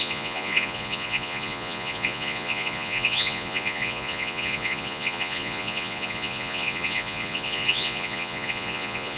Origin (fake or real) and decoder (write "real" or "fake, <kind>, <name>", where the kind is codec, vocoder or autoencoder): fake, vocoder, Vocos